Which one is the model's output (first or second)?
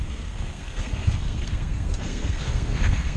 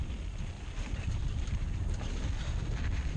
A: first